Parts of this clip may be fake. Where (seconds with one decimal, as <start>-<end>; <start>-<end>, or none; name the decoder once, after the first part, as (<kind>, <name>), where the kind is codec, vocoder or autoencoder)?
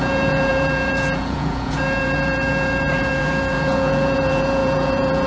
0.0-5.3 (vocoder, Vocos)